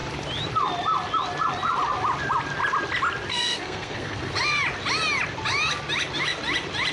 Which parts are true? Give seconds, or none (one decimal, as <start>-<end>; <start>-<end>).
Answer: 0.0-3.3; 4.3-6.9